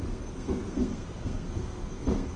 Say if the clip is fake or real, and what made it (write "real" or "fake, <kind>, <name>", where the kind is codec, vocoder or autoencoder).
fake, codec, SNAC